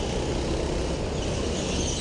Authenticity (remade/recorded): recorded